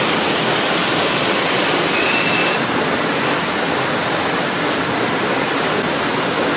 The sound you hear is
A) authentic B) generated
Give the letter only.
A